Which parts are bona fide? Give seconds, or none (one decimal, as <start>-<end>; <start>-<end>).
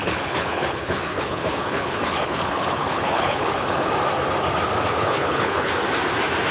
3.9-5.0; 5.7-6.5